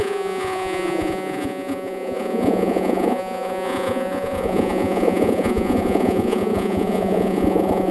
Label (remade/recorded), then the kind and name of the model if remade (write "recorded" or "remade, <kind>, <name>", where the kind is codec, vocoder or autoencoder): remade, vocoder, Vocos